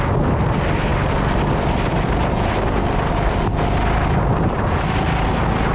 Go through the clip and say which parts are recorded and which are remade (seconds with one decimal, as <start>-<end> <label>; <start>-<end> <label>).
0.0-5.7 recorded

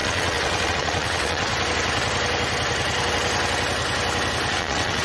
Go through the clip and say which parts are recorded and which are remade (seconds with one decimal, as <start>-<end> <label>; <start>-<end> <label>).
0.0-1.5 remade; 1.5-4.5 recorded; 4.5-5.0 remade

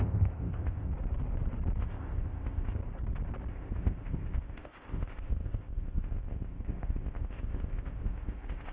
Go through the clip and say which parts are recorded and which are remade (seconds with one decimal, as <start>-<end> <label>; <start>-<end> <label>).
0.0-0.9 remade; 0.9-1.8 recorded; 1.8-2.8 remade; 2.8-3.5 recorded; 3.5-8.7 remade